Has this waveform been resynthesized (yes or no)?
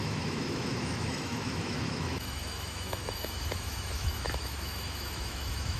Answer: yes